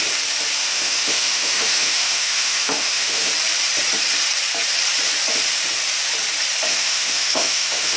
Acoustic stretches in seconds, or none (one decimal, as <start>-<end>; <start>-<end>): 0.0-0.6; 3.3-6.7